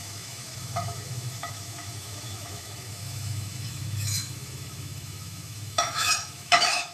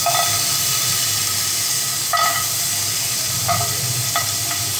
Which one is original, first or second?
second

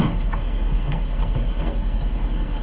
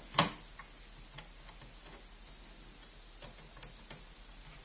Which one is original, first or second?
second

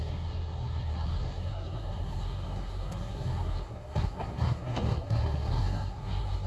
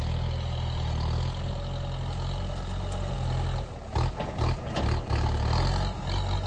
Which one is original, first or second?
second